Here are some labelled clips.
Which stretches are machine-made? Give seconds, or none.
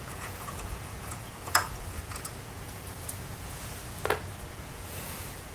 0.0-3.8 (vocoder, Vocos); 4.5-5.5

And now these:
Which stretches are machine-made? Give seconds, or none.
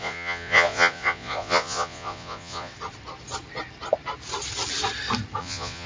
0.0-2.7 (vocoder, Vocos); 5.4-5.9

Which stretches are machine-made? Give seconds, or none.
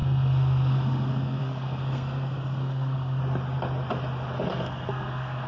0.0-3.2 (codec, SNAC); 4.5-5.5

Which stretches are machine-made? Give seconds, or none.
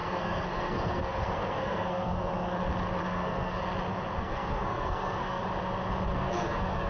0.0-2.3 (codec, SNAC); 3.0-3.6; 4.2-5.4; 6.1-6.9